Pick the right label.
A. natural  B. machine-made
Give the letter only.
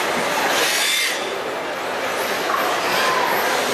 A